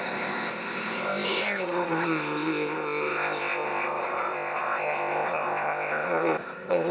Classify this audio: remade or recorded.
remade